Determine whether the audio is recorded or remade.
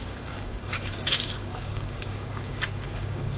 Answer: remade